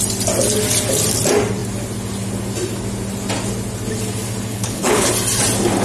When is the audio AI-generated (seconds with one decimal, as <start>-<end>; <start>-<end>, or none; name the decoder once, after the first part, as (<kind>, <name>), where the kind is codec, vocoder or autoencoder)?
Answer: 4.5-5.1 (codec, HILCodec)